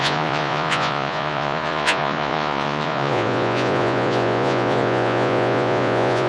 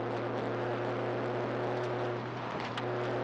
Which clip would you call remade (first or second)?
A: first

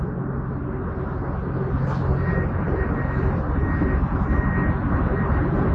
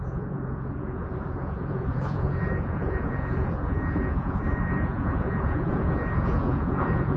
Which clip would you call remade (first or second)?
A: second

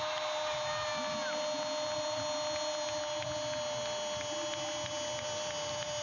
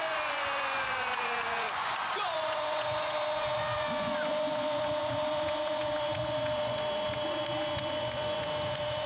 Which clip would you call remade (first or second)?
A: second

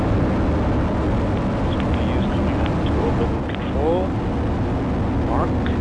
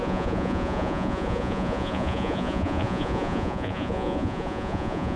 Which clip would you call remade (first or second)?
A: second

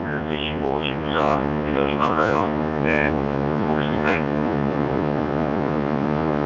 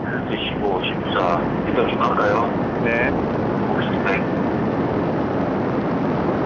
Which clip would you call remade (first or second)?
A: first